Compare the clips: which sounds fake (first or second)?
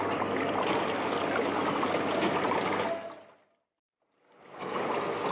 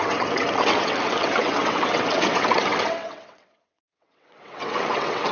second